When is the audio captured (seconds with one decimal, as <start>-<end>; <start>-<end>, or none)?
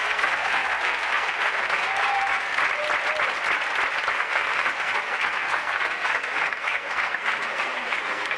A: 2.6-4.1